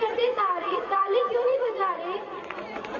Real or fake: fake